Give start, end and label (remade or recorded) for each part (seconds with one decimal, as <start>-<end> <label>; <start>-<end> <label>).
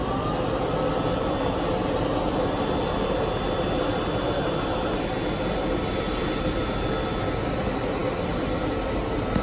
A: 0.0-9.4 recorded